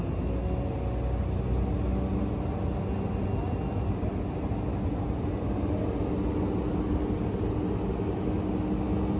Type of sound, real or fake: real